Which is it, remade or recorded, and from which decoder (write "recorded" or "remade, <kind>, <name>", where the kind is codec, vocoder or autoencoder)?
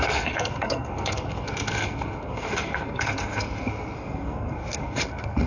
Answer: remade, codec, SNAC